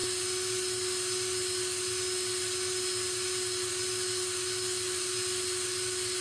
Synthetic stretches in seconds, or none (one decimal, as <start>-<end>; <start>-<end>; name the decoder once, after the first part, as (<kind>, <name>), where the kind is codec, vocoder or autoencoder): none